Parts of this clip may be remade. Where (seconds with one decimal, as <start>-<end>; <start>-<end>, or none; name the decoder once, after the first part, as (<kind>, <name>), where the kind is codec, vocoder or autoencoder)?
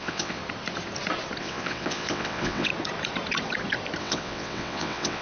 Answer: 0.0-0.4 (vocoder, WaveNeXt); 1.4-2.7; 4.0-5.2